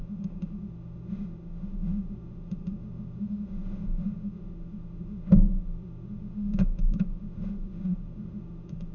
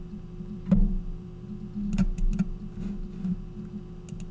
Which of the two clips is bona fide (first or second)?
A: second